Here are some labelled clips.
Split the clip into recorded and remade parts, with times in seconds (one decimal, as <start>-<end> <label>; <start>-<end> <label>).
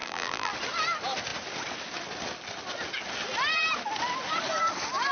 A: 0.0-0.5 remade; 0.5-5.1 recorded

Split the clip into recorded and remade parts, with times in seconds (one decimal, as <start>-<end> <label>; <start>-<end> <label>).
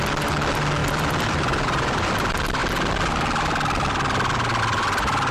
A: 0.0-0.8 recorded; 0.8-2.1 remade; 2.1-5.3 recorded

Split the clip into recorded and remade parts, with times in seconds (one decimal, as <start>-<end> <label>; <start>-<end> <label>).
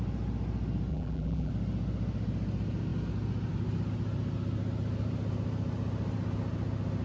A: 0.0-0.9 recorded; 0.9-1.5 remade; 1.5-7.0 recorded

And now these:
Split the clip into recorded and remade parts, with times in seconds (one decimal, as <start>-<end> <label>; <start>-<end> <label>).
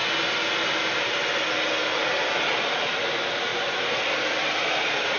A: 0.0-0.5 recorded; 0.5-1.2 remade; 1.2-2.7 recorded; 2.7-5.2 remade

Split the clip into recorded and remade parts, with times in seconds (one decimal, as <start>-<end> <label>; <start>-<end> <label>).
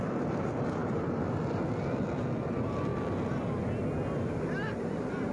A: 0.0-0.8 recorded; 0.8-1.6 remade; 1.6-5.3 recorded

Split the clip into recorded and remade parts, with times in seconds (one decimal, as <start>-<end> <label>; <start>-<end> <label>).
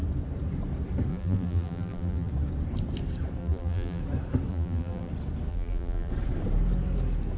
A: 0.0-1.1 recorded; 1.1-2.3 remade; 2.3-3.4 recorded; 3.4-4.0 remade; 4.0-4.5 recorded; 4.5-5.1 remade; 5.1-5.5 recorded; 5.5-6.1 remade; 6.1-7.4 recorded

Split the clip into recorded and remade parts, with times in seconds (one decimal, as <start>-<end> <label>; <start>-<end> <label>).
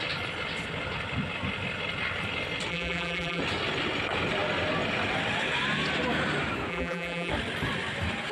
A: 0.0-2.7 recorded; 2.7-3.4 remade; 3.4-6.7 recorded; 6.7-7.3 remade; 7.3-8.3 recorded